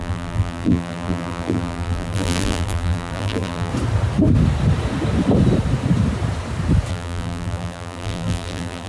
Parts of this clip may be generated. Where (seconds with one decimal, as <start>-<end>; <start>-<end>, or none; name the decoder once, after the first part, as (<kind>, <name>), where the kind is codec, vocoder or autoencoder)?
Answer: 0.0-3.7 (vocoder, BigVGAN v2); 6.9-8.9